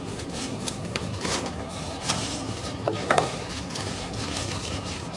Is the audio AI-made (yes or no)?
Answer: yes